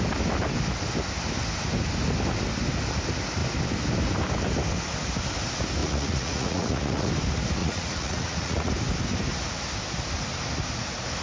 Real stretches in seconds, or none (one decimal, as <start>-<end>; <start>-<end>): 0.0-5.8; 7.1-7.6; 8.7-11.2